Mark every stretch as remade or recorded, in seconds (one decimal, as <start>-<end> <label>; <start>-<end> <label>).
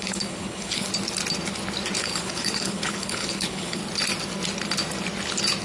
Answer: 0.0-0.9 remade; 0.9-2.0 recorded; 2.0-3.8 remade; 3.8-5.6 recorded